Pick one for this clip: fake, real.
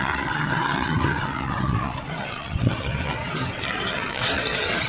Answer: fake